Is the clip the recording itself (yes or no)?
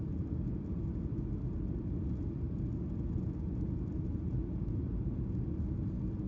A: yes